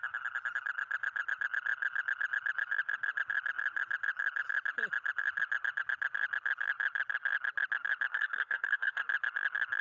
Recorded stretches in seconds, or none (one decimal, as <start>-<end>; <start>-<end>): 0.0-8.1; 9.0-9.8